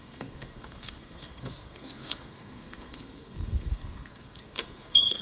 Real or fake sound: fake